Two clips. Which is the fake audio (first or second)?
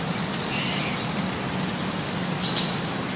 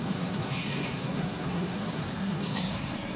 second